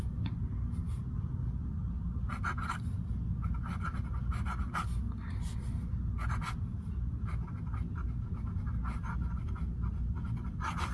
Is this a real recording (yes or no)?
yes